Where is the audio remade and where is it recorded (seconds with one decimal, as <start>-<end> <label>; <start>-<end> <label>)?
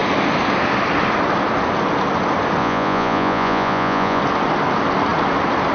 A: 0.0-2.6 recorded; 2.6-4.2 remade; 4.2-5.7 recorded